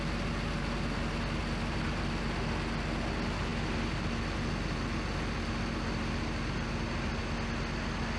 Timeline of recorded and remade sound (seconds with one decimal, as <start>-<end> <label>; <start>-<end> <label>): 0.0-8.2 recorded